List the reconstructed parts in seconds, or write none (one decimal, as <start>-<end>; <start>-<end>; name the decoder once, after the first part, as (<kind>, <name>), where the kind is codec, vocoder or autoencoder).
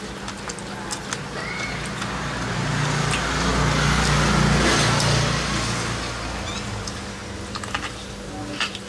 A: none